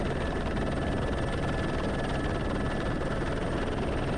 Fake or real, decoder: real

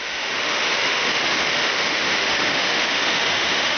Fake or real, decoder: fake, autoencoder, DAC-VAE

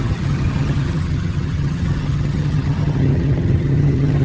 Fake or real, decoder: fake, vocoder, HiFi-GAN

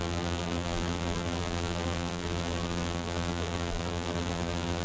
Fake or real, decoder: fake, vocoder, BigVGAN v2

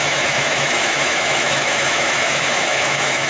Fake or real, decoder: fake, autoencoder, DAC-VAE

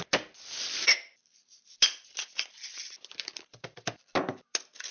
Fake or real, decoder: real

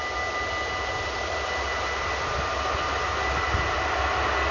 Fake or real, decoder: real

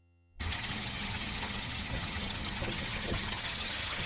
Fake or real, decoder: fake, vocoder, HiFi-GAN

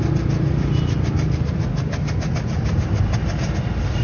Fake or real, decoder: real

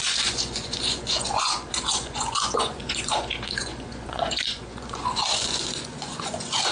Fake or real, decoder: fake, vocoder, Vocos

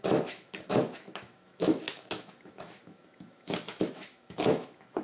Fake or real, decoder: fake, autoencoder, DAC-VAE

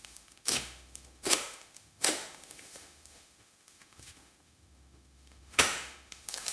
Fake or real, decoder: fake, autoencoder, DAC-VAE